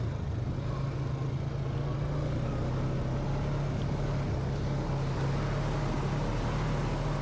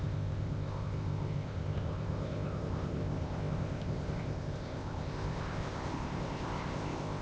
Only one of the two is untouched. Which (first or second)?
first